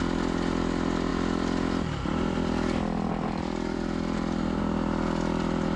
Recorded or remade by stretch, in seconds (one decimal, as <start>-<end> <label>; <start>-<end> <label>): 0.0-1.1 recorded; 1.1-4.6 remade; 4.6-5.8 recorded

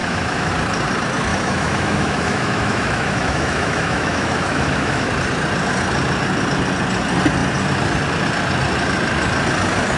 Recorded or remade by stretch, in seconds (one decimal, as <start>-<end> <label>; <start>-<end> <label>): 0.0-0.5 remade; 0.5-1.3 recorded; 1.3-5.1 remade; 5.1-10.0 recorded

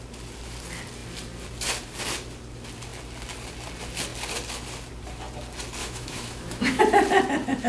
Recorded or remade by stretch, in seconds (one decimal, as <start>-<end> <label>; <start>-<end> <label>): 0.0-5.8 recorded; 5.8-6.8 remade; 6.8-7.7 recorded

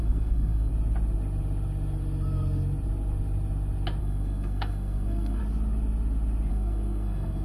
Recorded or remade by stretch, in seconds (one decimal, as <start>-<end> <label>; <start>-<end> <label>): 0.0-0.7 remade; 0.7-4.0 recorded; 4.0-5.4 remade; 5.4-6.5 recorded; 6.5-7.4 remade

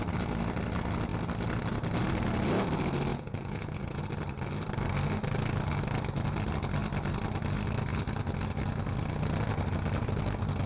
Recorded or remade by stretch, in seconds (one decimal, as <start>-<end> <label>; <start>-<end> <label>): 0.0-3.1 recorded; 3.1-4.0 remade; 4.0-10.7 recorded

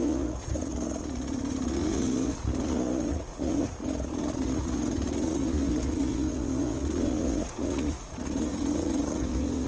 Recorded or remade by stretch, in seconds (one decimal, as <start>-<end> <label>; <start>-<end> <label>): 0.0-9.7 remade